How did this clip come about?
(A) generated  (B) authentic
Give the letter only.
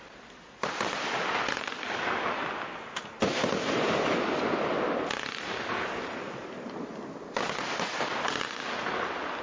B